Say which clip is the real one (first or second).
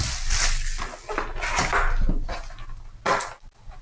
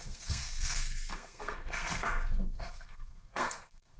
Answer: first